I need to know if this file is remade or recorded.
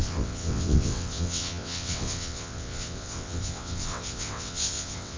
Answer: remade